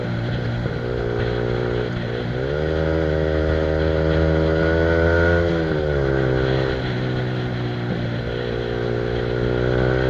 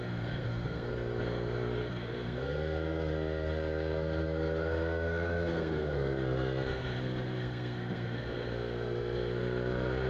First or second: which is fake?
second